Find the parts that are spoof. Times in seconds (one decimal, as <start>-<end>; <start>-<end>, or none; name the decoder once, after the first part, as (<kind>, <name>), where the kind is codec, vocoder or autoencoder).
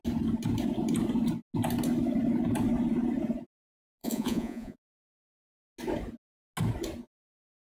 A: 4.0-5.3 (vocoder, Vocos)